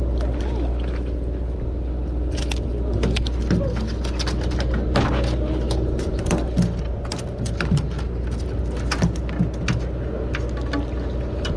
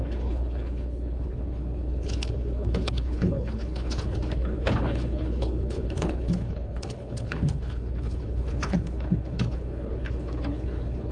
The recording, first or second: first